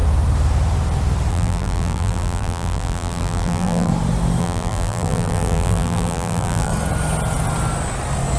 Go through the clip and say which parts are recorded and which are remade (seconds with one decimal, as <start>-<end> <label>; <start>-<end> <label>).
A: 0.0-1.3 recorded; 1.3-3.9 remade; 3.9-4.4 recorded; 4.4-6.7 remade; 6.7-8.4 recorded